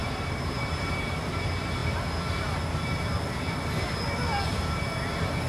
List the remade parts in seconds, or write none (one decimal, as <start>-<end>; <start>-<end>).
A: 0.0-1.2